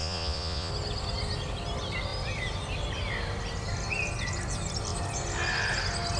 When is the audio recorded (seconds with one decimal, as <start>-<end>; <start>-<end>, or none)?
0.7-6.2